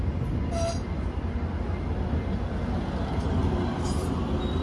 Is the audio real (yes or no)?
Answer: yes